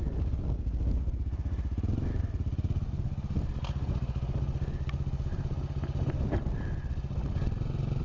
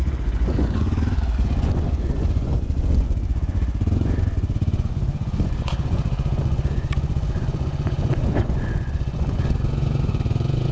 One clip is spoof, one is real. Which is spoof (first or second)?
second